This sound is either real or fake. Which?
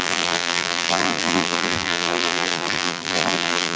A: fake